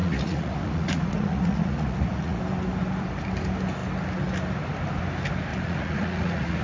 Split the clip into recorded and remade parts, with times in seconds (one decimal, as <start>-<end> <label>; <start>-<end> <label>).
0.0-2.4 remade; 2.4-5.5 recorded; 5.5-6.6 remade